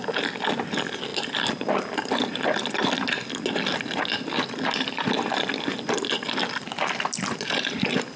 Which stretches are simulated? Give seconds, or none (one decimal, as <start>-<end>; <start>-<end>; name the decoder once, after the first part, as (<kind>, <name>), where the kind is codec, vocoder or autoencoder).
none